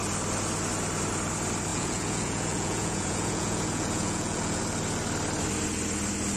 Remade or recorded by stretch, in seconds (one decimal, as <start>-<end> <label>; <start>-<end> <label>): 0.0-1.7 recorded; 1.7-4.6 remade; 4.6-6.4 recorded